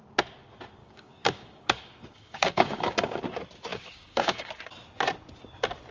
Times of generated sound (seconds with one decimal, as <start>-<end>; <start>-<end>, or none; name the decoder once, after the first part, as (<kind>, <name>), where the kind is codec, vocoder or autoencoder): 0.8-3.2 (codec, DAC); 3.7-4.5